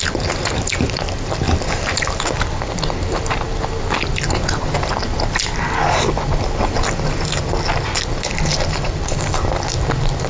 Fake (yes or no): no